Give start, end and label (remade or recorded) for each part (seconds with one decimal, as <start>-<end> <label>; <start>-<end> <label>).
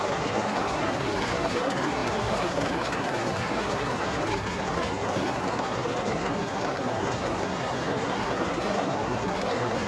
0.0-9.9 remade